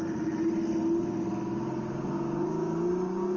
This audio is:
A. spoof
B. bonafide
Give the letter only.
B